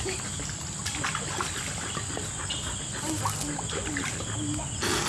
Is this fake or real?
real